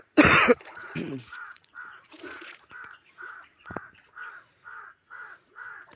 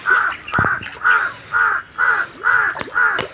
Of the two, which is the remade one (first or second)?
first